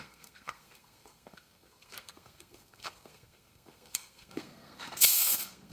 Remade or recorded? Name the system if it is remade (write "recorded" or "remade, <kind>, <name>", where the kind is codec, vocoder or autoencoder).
remade, codec, SNAC